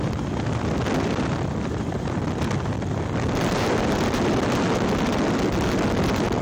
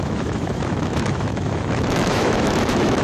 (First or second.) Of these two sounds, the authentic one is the first